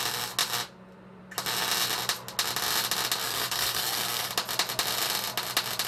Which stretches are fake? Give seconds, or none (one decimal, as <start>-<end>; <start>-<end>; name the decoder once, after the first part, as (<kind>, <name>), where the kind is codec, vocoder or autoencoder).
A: 3.2-4.3 (codec, SNAC)